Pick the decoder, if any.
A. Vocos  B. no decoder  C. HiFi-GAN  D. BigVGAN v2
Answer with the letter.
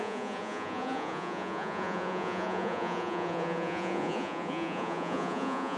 A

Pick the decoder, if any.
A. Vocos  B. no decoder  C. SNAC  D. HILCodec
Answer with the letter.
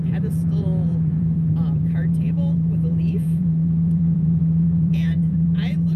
A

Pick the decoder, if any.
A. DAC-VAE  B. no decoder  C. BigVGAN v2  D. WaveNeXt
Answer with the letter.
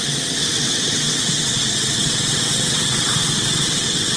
D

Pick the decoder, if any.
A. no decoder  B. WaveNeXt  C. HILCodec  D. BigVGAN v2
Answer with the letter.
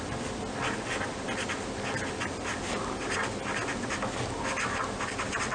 A